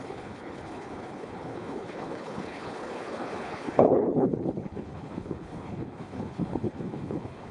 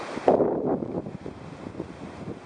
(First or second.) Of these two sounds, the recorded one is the second